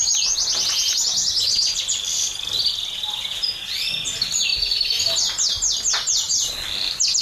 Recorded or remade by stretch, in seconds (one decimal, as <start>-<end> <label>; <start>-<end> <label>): 0.0-7.2 recorded